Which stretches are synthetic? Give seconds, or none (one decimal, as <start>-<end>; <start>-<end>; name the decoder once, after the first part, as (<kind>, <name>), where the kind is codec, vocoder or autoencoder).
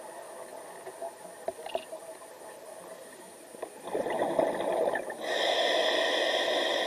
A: none